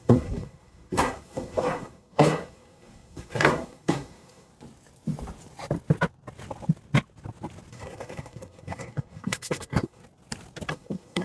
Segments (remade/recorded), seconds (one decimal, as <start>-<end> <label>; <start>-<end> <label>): 0.0-4.5 remade; 4.5-7.7 recorded; 7.7-10.0 remade; 10.0-10.7 recorded; 10.7-11.2 remade